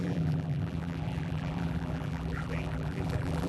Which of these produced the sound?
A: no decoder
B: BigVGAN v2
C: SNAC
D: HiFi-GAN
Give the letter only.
B